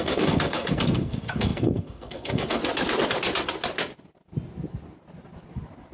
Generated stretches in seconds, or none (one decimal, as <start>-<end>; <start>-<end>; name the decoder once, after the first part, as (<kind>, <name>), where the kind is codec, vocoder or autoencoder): 0.0-2.6 (codec, SNAC)